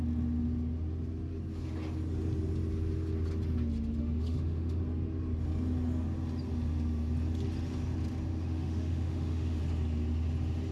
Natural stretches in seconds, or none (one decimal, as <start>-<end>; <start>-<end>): 0.0-4.0; 4.8-8.3; 9.6-10.7